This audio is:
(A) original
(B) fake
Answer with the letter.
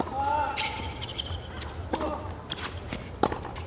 A